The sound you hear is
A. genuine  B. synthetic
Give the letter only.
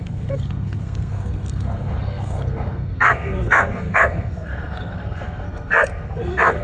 B